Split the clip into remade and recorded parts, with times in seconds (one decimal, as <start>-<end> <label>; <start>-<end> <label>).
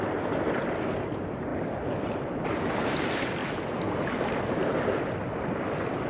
0.0-3.4 remade; 3.4-6.1 recorded